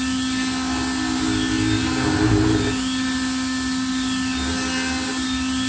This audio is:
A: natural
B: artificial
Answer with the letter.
A